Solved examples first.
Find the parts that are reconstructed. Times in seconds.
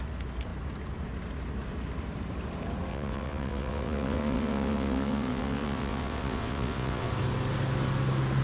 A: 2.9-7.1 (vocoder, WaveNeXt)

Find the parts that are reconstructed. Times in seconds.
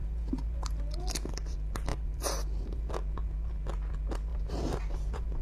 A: 0.0-0.8 (vocoder, BigVGAN v2); 1.9-2.9; 4.3-5.4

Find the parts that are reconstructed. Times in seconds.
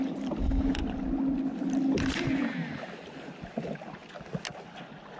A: none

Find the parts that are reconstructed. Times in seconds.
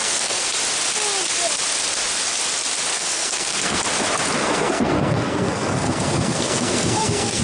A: 0.0-0.5 (codec, SNAC); 2.9-3.8; 4.4-7.4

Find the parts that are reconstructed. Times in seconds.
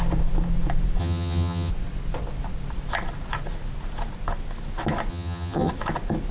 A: 1.0-1.7 (vocoder, HiFi-GAN); 5.1-5.7